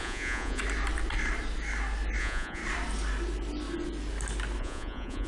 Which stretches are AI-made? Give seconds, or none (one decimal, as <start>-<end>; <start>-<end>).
0.0-0.6; 2.2-2.6; 4.6-5.3